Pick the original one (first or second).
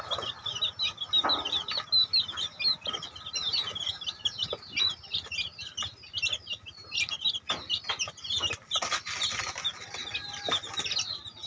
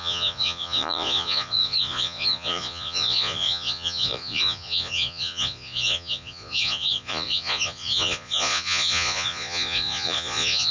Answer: first